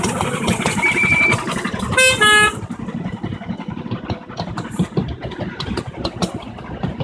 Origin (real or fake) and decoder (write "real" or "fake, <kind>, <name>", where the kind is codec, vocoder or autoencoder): real